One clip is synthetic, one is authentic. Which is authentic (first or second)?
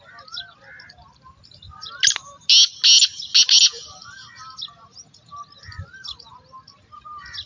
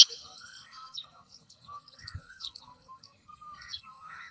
first